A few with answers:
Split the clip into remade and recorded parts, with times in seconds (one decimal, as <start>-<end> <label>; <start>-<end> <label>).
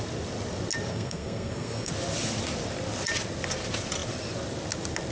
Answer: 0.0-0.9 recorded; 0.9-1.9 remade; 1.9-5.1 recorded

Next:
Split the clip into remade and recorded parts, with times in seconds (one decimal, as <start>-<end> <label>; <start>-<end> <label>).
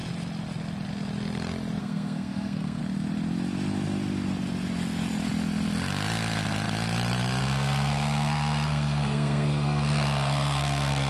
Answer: 0.0-1.8 recorded; 1.8-2.8 remade; 2.8-7.4 recorded; 7.4-11.1 remade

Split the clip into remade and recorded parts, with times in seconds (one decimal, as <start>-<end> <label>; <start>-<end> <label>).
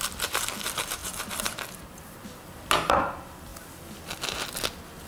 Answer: 0.0-5.1 recorded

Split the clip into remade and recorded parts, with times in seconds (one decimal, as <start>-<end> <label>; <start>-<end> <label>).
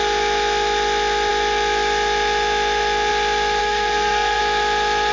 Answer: 0.0-3.6 recorded; 3.6-4.4 remade; 4.4-5.1 recorded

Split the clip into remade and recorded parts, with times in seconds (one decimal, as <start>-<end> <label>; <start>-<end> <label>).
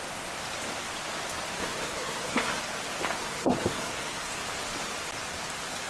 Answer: 0.0-1.6 recorded; 1.6-2.6 remade; 2.6-3.2 recorded; 3.2-4.3 remade; 4.3-5.9 recorded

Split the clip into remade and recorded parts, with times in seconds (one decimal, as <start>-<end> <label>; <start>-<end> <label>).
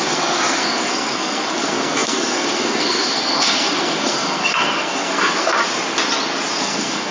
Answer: 0.0-5.6 remade; 5.6-6.6 recorded; 6.6-7.1 remade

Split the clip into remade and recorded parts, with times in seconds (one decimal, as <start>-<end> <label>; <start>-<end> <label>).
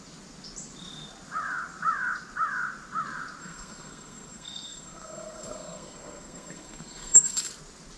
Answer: 0.0-3.4 recorded; 3.4-7.5 remade; 7.5-8.0 recorded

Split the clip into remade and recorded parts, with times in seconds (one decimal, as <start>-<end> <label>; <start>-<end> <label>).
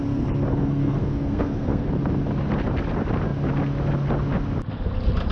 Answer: 0.0-0.5 recorded; 0.5-1.9 remade; 1.9-5.3 recorded